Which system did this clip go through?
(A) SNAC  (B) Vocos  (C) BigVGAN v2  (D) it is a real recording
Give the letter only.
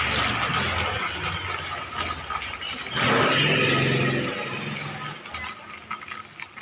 D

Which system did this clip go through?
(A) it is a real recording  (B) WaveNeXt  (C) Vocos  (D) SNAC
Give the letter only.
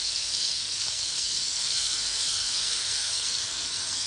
D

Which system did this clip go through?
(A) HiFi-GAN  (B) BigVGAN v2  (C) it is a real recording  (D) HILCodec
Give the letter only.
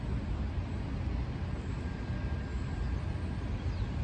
C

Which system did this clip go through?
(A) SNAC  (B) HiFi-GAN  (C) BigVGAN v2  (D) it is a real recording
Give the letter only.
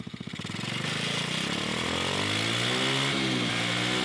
D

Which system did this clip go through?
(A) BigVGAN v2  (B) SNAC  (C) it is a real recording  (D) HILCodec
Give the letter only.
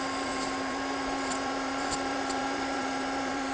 A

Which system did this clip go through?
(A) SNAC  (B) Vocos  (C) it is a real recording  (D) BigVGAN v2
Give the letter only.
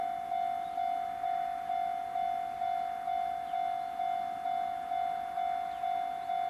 C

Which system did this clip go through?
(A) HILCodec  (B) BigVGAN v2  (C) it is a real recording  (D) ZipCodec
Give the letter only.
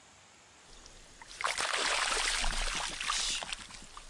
C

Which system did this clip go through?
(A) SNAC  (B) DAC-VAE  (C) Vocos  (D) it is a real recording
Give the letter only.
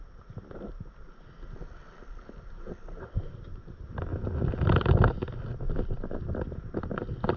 D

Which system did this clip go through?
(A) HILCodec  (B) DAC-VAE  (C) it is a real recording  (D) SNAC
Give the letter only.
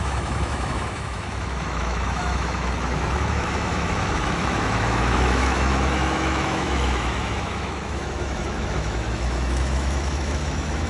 B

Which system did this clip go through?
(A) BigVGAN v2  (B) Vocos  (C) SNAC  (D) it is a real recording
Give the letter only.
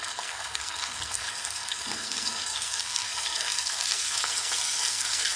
C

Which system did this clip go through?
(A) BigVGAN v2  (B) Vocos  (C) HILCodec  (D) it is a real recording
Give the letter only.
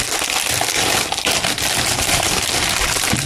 A